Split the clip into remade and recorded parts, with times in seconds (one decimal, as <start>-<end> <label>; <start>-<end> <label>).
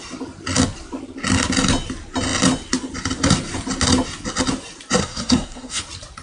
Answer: 0.0-5.0 recorded; 5.0-5.8 remade; 5.8-6.2 recorded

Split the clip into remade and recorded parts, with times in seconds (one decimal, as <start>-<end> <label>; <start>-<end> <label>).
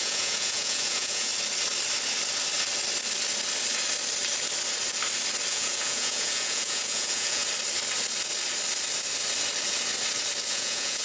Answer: 0.0-1.3 remade; 1.3-5.5 recorded; 5.5-7.4 remade; 7.4-10.5 recorded; 10.5-11.0 remade